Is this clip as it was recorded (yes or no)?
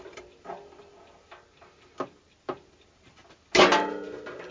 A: yes